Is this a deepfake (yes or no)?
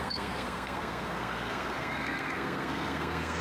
yes